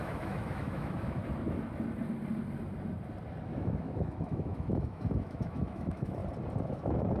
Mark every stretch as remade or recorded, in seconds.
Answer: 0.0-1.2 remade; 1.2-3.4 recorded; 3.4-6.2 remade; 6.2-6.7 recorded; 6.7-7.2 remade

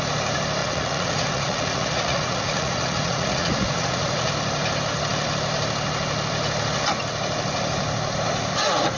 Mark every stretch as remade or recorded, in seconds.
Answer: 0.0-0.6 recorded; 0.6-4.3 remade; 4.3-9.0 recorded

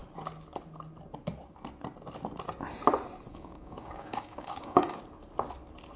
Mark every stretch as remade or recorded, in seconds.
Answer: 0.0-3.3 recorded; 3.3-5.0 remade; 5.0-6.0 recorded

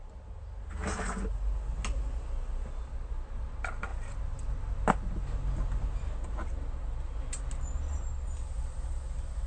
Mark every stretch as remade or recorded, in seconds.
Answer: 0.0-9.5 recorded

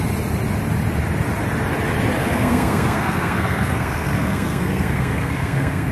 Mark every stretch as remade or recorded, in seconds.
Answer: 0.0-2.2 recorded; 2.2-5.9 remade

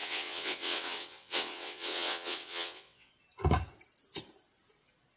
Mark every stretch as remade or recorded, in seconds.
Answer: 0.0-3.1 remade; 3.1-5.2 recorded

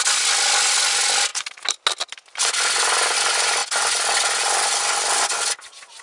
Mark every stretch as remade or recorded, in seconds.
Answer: 0.0-6.0 recorded

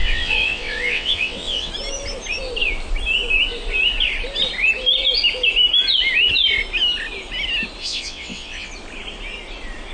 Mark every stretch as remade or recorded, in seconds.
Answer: 0.0-1.7 remade; 1.7-7.8 recorded; 7.8-8.7 remade; 8.7-9.9 recorded